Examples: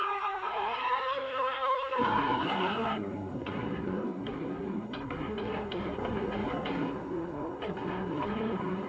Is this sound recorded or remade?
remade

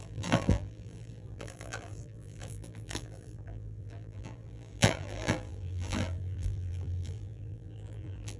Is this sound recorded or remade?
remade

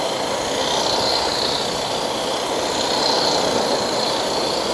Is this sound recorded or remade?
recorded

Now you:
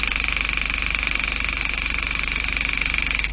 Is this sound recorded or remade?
recorded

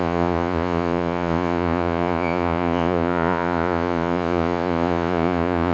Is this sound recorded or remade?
remade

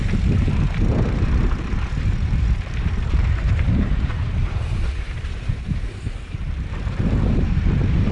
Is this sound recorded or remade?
remade